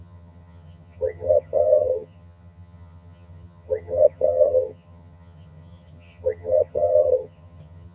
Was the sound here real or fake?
fake